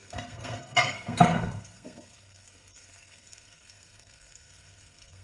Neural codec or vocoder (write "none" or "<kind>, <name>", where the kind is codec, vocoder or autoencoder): codec, SNAC